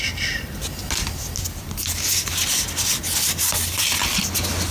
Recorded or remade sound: recorded